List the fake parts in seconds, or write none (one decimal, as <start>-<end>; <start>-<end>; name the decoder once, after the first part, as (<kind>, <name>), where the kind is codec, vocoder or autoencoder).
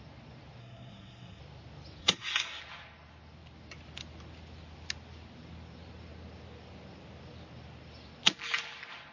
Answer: 0.6-1.4 (codec, SNAC); 2.0-2.6